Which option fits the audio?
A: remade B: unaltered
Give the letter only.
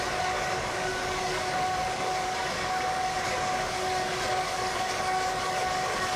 A